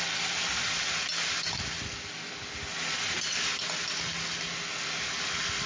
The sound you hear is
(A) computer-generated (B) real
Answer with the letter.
B